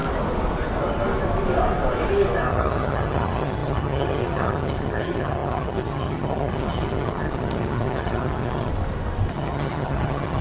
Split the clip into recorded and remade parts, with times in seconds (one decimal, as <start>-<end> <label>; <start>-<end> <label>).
0.0-2.5 recorded; 2.5-8.7 remade; 8.7-9.3 recorded; 9.3-10.4 remade